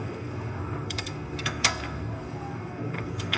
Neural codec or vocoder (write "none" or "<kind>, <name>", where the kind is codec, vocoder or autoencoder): codec, SNAC